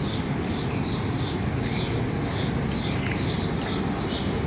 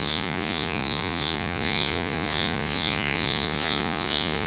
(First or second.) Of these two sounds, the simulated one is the second